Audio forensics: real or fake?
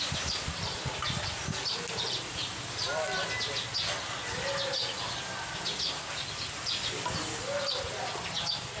real